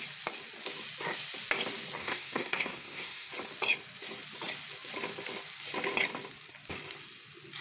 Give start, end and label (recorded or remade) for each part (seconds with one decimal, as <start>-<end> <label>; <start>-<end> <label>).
0.0-2.0 recorded; 2.0-3.3 remade; 3.3-7.6 recorded